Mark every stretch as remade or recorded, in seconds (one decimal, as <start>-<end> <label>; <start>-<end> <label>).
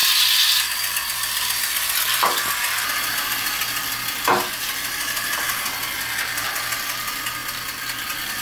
0.0-8.4 recorded